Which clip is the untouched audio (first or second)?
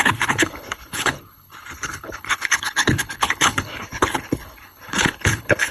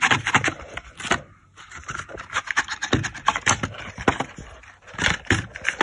second